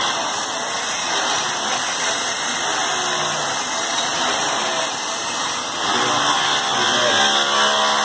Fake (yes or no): no